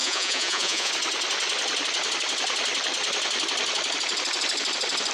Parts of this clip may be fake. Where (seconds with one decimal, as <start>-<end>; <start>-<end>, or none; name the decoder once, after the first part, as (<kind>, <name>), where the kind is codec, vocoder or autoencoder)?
0.0-0.9 (vocoder, Vocos)